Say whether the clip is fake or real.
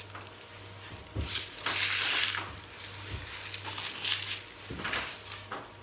real